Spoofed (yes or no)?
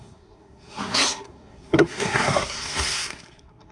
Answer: yes